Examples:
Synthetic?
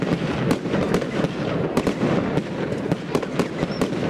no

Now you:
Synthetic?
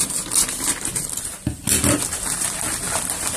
no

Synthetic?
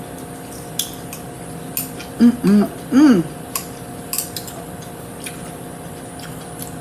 no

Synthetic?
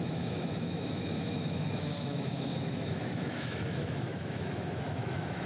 yes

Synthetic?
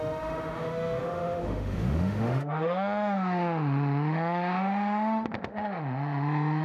yes